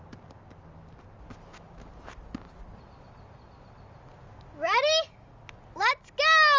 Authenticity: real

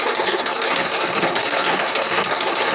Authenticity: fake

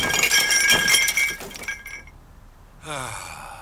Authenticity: fake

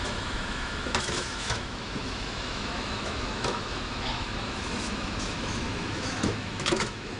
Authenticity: fake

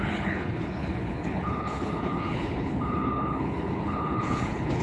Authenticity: fake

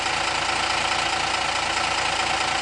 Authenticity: real